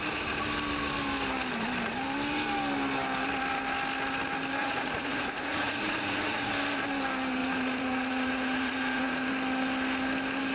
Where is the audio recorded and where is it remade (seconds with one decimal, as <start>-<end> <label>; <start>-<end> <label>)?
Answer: 0.0-4.6 recorded; 4.6-6.5 remade; 6.5-7.4 recorded; 7.4-9.3 remade; 9.3-10.5 recorded